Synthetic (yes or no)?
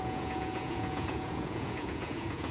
yes